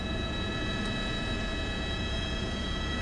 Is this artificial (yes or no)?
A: yes